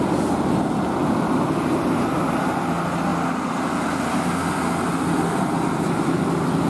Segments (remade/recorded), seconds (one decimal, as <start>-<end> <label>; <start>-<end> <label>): 0.0-6.7 recorded